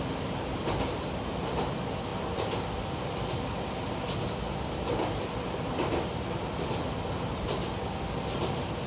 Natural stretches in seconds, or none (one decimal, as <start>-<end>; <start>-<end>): 0.0-8.9